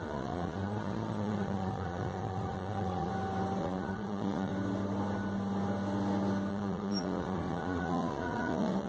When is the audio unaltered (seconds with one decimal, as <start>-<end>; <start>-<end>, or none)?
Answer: 3.1-3.6; 4.5-6.5